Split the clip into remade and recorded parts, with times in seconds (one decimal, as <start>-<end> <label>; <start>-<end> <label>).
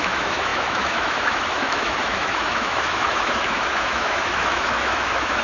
0.0-5.4 remade